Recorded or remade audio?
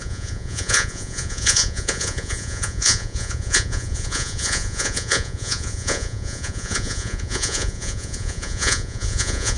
remade